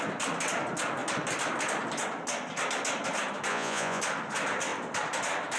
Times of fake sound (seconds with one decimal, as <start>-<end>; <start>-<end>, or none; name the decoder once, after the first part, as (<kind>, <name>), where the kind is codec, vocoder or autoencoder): 3.5-4.0 (vocoder, Vocos)